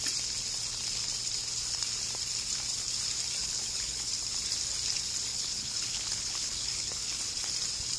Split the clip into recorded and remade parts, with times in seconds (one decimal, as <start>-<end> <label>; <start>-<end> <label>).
0.0-3.4 recorded; 3.4-4.1 remade; 4.1-5.3 recorded; 5.3-7.2 remade; 7.2-8.0 recorded

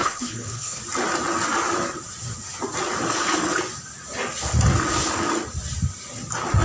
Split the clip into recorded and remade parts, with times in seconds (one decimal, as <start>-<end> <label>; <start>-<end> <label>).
0.0-0.8 remade; 0.8-6.6 recorded

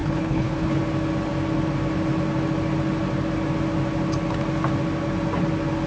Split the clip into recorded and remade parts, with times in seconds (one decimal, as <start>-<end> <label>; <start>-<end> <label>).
0.0-0.8 remade; 0.8-5.9 recorded

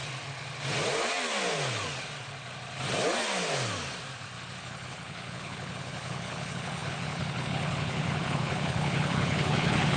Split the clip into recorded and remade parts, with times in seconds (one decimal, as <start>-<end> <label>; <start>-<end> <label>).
0.0-4.6 recorded; 4.6-10.0 remade

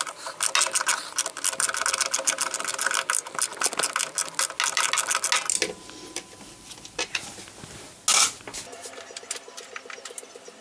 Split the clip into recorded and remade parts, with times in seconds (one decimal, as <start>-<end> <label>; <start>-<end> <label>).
0.0-10.6 recorded